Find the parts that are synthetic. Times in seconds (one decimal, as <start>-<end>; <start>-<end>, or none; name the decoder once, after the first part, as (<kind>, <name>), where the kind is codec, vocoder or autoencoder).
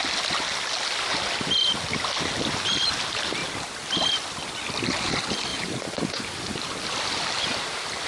5.5-6.8 (vocoder, BigVGAN v2)